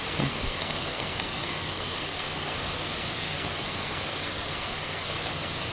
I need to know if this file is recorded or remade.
remade